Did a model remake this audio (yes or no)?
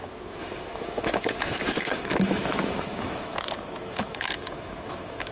yes